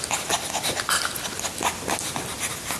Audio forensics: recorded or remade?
recorded